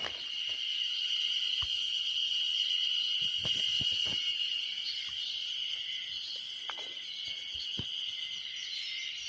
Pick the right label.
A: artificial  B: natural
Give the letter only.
B